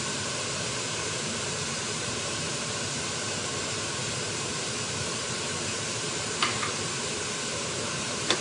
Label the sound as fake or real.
fake